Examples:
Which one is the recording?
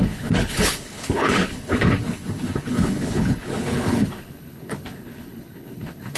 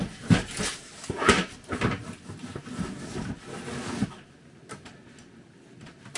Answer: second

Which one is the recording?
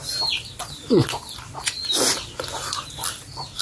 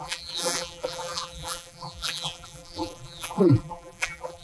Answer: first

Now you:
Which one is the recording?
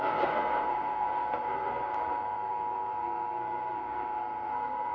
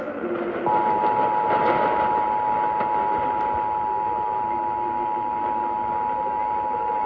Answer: second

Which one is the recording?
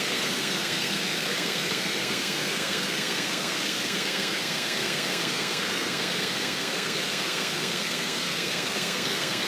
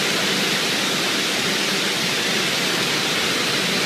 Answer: second